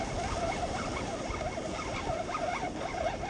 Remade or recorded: recorded